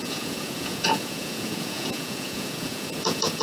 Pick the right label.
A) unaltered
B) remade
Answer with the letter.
B